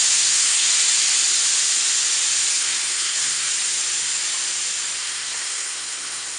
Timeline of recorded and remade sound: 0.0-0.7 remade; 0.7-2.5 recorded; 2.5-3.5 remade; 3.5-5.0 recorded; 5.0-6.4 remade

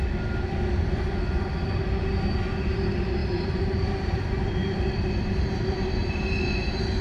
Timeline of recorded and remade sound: 0.0-3.2 recorded; 3.2-6.2 remade; 6.2-7.0 recorded

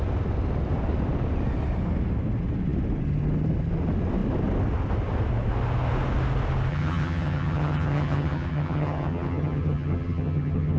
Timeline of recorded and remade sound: 0.0-6.7 recorded; 6.7-10.8 remade